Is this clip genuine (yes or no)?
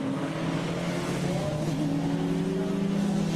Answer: yes